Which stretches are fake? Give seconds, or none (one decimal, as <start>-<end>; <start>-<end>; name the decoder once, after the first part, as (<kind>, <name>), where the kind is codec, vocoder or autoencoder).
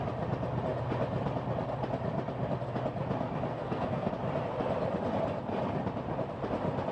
3.5-4.1 (codec, SNAC)